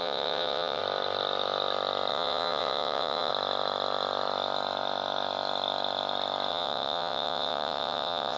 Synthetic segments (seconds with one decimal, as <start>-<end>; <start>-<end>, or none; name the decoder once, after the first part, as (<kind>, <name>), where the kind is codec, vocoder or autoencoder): 0.0-0.8 (vocoder, WaveNeXt); 2.1-3.3; 6.5-8.4